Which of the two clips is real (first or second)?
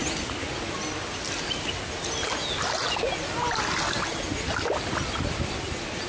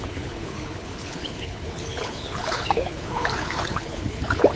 first